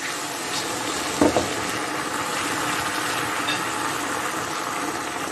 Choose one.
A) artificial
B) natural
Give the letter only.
B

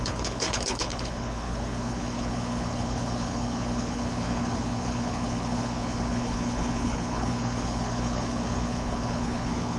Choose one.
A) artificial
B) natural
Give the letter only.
A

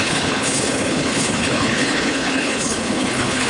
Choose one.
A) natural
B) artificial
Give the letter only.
B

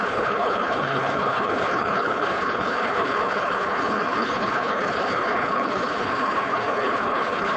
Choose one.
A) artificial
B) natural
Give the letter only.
A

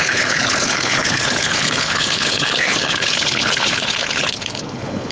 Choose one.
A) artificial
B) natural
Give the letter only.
A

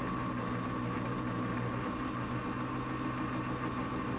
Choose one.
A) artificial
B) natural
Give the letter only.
B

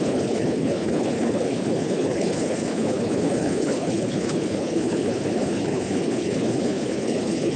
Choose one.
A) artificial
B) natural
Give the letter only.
A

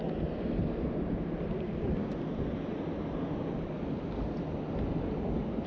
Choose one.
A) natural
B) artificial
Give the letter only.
A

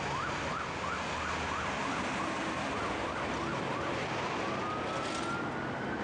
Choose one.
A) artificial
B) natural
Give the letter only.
B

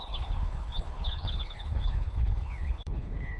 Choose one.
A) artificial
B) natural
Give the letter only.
A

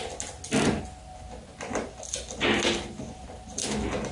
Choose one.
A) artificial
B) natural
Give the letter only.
B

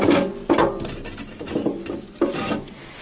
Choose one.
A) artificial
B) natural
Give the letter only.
B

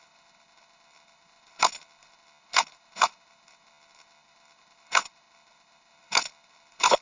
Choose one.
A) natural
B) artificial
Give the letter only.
B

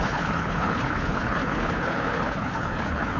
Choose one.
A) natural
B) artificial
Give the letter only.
B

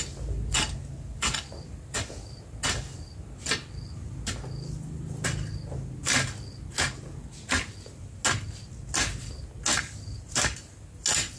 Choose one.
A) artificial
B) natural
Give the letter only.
B